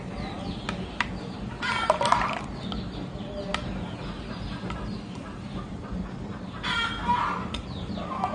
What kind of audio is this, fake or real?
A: real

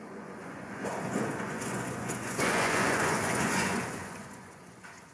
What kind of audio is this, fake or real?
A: fake